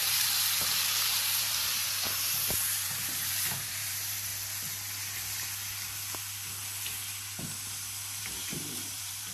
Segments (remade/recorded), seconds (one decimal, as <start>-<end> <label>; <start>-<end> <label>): 0.0-4.3 remade; 4.3-8.2 recorded; 8.2-9.3 remade